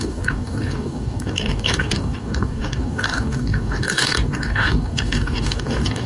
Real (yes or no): no